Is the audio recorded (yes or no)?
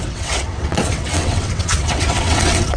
no